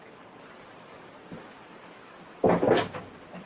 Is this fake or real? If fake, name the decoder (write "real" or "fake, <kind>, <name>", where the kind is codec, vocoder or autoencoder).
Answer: real